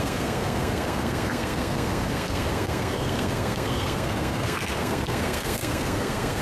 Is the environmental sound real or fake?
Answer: fake